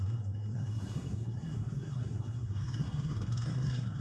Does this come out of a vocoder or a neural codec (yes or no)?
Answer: yes